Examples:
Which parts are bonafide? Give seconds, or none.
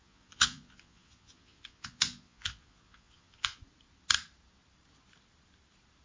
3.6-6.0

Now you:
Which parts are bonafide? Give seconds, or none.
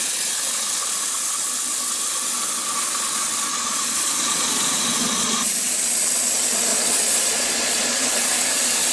0.0-3.5; 5.5-6.7; 8.1-8.9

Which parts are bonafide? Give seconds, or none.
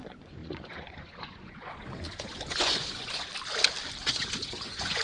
3.3-4.0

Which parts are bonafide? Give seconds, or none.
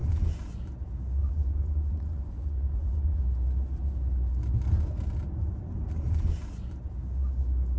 0.0-1.2; 3.2-7.8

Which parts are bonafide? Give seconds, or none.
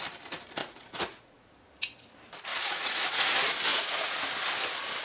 0.0-0.6; 1.5-2.5; 3.3-3.7; 4.2-5.0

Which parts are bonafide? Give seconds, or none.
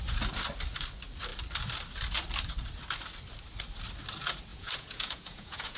0.0-4.5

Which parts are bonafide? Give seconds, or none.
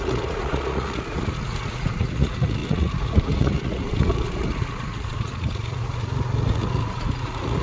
none